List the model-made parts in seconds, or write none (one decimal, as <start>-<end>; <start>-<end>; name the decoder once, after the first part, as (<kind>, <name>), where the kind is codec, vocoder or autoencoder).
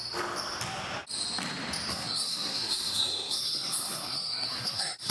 1.9-5.1 (codec, SNAC)